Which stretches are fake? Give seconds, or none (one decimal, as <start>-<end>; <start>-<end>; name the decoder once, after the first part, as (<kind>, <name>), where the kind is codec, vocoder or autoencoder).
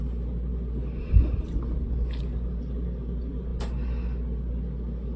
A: none